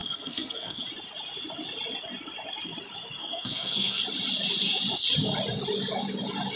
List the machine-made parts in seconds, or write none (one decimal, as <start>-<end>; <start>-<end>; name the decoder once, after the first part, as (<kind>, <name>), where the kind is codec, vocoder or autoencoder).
0.0-0.8 (codec, SNAC); 3.2-4.0